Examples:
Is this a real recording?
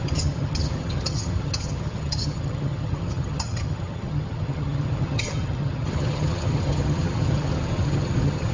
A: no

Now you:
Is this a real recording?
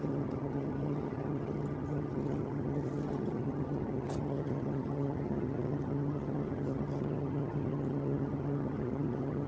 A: no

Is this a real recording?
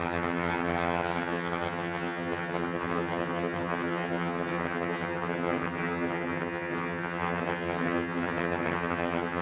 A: no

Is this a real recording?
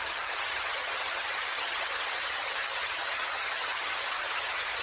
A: no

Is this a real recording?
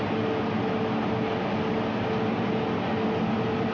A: yes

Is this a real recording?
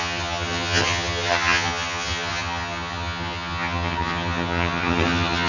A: no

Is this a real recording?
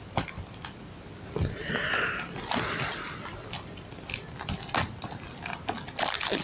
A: yes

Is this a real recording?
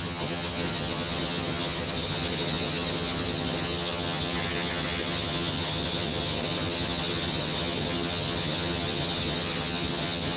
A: no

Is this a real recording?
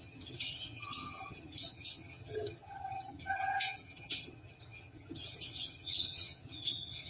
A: no